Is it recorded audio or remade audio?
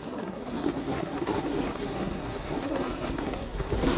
remade